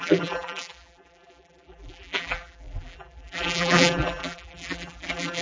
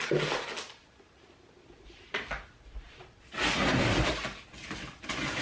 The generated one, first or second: first